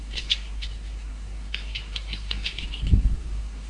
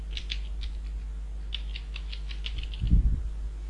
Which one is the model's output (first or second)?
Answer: first